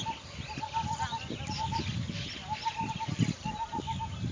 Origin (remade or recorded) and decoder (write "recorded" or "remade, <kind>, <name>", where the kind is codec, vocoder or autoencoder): recorded